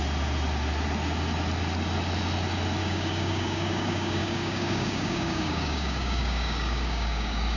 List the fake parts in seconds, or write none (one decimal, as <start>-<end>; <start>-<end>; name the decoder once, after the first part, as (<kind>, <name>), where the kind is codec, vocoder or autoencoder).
2.8-7.6 (codec, DAC)